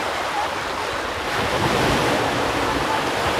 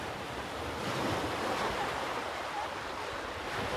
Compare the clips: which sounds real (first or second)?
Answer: first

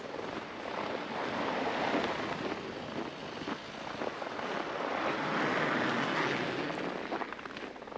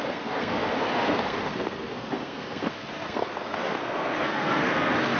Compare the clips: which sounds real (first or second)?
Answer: first